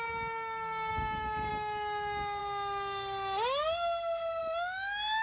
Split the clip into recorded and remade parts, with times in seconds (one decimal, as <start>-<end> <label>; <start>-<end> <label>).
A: 0.0-0.9 recorded; 0.9-1.5 remade; 1.5-5.2 recorded